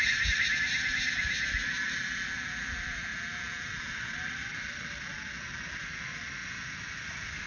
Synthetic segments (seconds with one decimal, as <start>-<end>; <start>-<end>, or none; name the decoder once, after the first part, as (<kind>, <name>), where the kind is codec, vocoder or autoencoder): none